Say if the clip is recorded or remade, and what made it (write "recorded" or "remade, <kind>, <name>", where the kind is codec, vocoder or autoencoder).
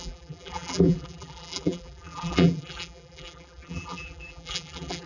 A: remade, vocoder, BigVGAN v2